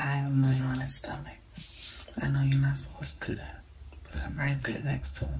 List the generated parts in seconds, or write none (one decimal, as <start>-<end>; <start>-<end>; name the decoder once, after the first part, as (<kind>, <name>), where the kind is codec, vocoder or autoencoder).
0.0-0.6 (codec, SNAC); 2.9-3.6; 4.1-5.4